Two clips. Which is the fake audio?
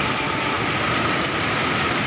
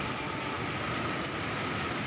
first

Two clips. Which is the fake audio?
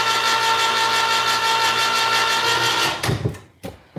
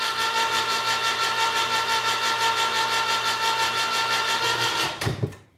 second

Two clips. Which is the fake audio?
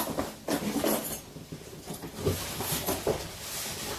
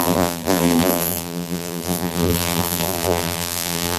second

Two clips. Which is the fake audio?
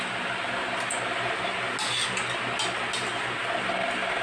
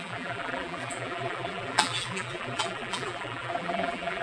second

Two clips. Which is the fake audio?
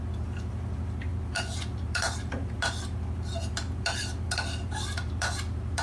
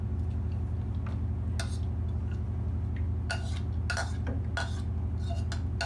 first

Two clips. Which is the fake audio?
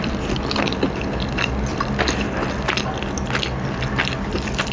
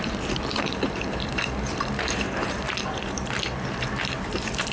second